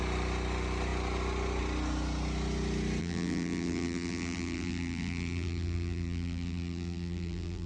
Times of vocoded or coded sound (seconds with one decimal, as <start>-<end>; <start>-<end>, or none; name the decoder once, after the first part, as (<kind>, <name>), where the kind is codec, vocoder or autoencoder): 3.0-7.7 (vocoder, BigVGAN v2)